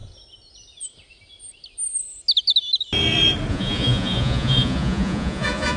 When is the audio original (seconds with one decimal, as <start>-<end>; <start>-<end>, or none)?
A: 0.0-3.5

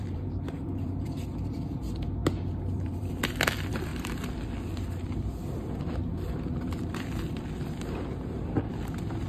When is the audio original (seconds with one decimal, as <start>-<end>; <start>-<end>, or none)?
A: 2.2-2.7